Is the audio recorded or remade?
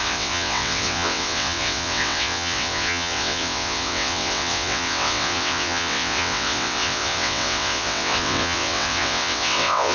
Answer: remade